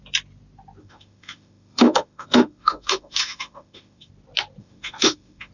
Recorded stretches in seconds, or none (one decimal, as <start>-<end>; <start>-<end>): 0.0-0.8; 4.1-4.6